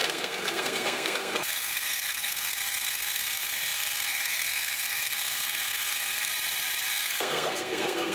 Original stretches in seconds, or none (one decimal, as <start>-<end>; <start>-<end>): 6.3-6.9